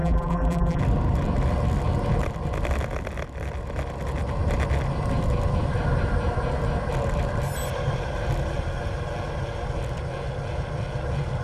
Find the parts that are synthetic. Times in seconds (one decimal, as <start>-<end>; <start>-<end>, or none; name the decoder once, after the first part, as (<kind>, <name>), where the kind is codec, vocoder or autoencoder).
0.0-0.8 (vocoder, BigVGAN v2)